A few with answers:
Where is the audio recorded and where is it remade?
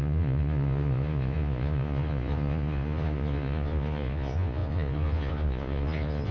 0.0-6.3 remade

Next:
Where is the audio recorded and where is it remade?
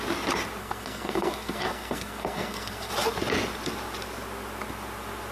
0.0-0.6 recorded; 0.6-2.9 remade; 2.9-5.3 recorded